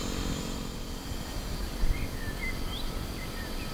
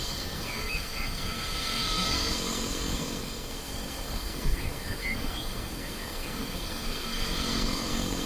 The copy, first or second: second